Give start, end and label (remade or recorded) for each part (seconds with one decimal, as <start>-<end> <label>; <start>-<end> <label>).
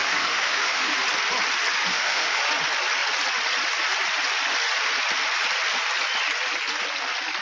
0.0-0.9 remade; 0.9-1.9 recorded; 1.9-2.4 remade; 2.4-7.4 recorded